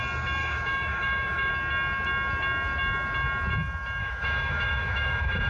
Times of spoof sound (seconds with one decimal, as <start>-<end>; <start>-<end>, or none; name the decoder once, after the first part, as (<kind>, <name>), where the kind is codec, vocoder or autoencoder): 0.4-1.5 (autoencoder, DAC-VAE); 4.0-5.5